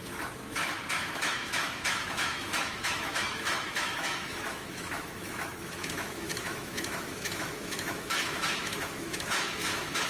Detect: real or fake fake